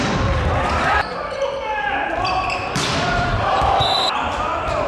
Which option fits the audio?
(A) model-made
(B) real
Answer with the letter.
A